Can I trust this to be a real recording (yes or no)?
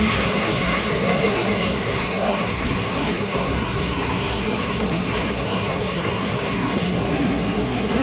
no